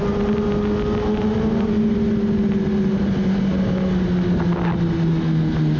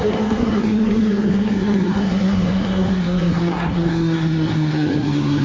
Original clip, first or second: first